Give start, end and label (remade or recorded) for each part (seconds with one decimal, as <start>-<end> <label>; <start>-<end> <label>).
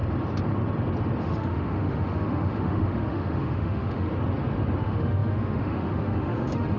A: 0.0-1.2 recorded; 1.2-4.1 remade; 4.1-4.8 recorded; 4.8-6.8 remade